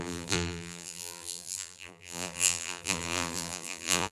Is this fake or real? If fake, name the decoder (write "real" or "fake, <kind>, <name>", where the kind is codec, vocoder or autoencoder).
fake, vocoder, BigVGAN v2